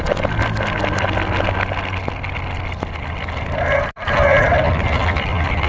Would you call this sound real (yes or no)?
yes